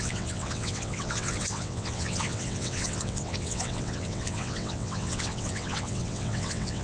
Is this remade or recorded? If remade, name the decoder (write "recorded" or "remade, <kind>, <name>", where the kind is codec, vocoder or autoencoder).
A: remade, vocoder, WaveNeXt